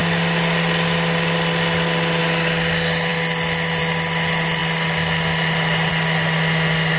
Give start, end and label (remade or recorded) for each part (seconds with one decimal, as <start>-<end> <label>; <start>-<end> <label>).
0.0-7.0 recorded